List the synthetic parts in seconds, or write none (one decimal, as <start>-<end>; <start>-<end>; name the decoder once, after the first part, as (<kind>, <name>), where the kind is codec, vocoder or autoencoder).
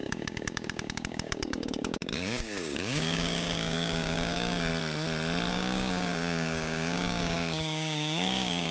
0.0-4.7 (codec, DAC); 5.5-8.7